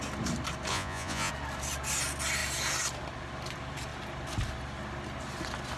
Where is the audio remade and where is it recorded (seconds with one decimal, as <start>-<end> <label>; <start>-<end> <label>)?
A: 0.0-0.7 recorded; 0.7-1.3 remade; 1.3-5.8 recorded

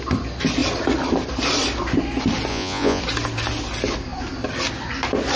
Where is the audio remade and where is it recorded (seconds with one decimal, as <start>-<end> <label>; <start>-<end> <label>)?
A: 0.0-2.5 recorded; 2.5-3.0 remade; 3.0-5.4 recorded

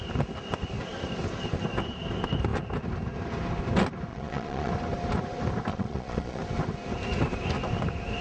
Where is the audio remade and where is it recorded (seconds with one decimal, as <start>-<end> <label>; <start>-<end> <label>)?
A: 0.0-4.1 recorded; 4.1-4.7 remade; 4.7-5.7 recorded; 5.7-6.4 remade; 6.4-8.2 recorded

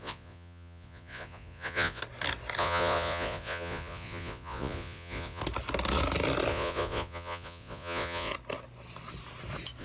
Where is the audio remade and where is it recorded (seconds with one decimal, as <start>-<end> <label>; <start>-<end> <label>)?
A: 0.0-2.0 remade; 2.0-2.6 recorded; 2.6-5.4 remade; 5.4-6.5 recorded; 6.5-8.3 remade; 8.3-9.8 recorded

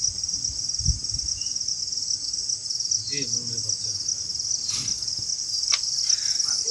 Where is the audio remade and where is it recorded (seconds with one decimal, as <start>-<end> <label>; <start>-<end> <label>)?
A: 0.0-6.7 recorded

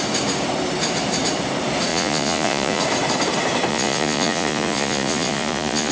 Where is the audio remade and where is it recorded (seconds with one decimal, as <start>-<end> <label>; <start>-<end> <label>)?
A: 0.0-1.9 recorded; 1.9-2.8 remade; 2.8-3.7 recorded; 3.7-5.9 remade

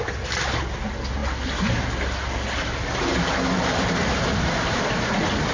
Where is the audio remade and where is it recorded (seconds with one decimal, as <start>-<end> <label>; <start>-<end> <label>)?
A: 0.0-5.5 recorded

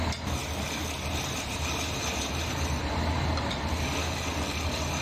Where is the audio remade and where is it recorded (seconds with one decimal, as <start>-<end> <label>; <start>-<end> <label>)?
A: 0.0-5.0 recorded